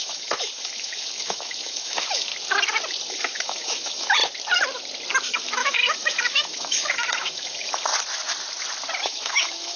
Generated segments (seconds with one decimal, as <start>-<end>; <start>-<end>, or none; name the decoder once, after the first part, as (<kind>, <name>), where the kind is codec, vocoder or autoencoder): 0.0-2.3 (autoencoder, DAC-VAE); 3.1-4.2; 5.3-7.9; 9.0-9.8